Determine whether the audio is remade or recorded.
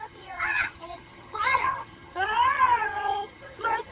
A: remade